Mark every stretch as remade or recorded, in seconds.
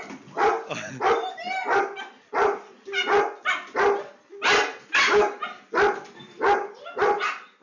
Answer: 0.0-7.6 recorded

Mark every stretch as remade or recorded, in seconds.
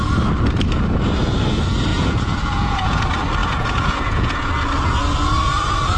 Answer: 0.0-1.9 recorded; 1.9-3.0 remade; 3.0-3.4 recorded; 3.4-4.5 remade; 4.5-6.0 recorded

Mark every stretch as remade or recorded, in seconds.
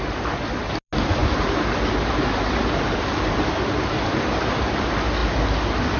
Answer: 0.0-6.0 recorded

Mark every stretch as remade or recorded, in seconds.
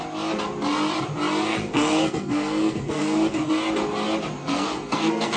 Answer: 0.0-1.5 recorded; 1.5-3.5 remade; 3.5-4.4 recorded; 4.4-5.4 remade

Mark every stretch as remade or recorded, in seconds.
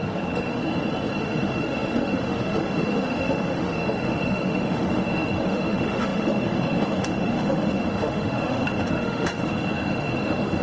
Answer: 0.0-0.6 remade; 0.6-1.2 recorded; 1.2-10.6 remade